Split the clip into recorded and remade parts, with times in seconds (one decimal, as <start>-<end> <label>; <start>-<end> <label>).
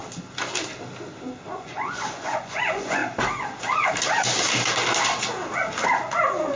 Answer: 0.0-1.5 recorded; 1.5-3.0 remade; 3.0-6.6 recorded